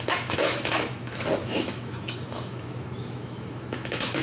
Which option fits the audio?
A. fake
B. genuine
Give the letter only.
A